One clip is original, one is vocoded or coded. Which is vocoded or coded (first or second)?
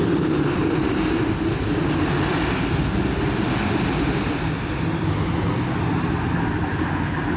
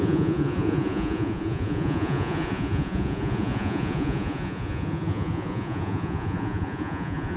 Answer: second